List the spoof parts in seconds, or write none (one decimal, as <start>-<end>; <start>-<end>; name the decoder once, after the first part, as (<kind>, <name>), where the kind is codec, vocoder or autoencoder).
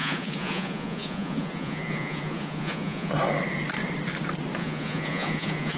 0.0-3.1 (vocoder, Vocos); 4.6-5.8